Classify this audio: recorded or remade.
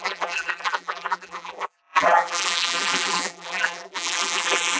remade